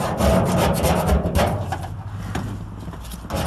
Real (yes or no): yes